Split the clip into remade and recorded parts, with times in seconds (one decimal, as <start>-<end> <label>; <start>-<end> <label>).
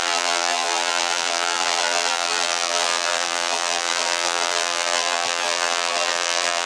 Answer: 0.0-6.7 remade